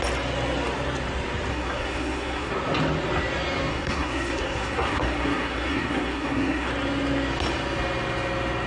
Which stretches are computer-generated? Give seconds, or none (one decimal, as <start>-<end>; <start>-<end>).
1.5-2.5; 3.7-6.7